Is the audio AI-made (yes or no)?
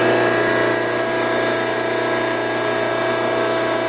no